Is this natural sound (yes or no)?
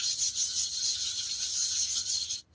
no